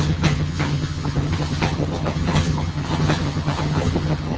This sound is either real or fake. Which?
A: fake